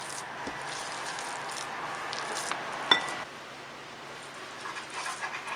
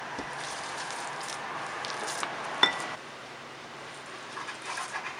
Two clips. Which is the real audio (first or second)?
first